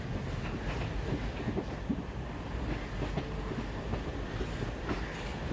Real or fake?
real